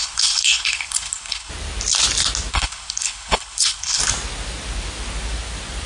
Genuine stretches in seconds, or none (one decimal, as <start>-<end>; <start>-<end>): 1.5-2.5; 4.0-5.9